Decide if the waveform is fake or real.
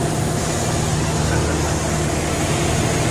real